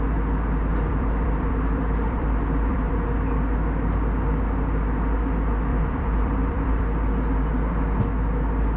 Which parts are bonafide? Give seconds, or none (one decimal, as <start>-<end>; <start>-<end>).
0.0-0.7; 2.9-5.7; 6.8-8.8